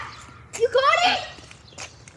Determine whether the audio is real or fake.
real